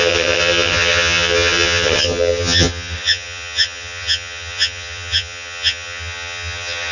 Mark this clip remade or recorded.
remade